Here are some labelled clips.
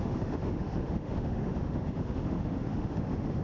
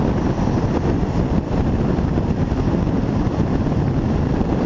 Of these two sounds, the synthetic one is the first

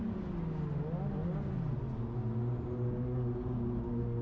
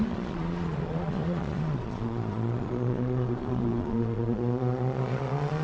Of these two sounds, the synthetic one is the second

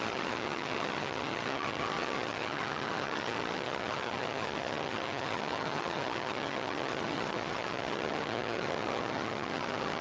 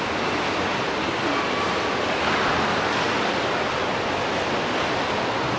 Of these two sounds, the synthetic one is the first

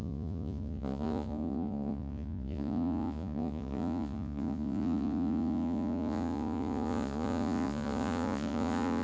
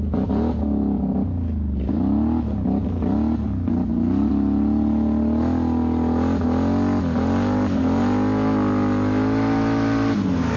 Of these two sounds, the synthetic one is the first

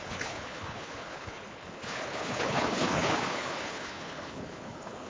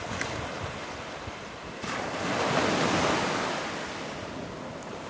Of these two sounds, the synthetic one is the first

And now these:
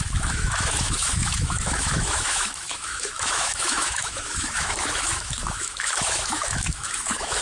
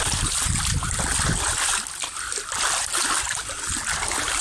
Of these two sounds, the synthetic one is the first